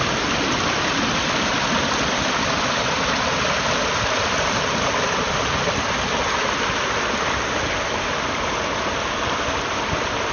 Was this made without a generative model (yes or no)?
yes